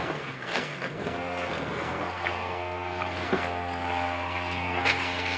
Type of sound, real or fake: fake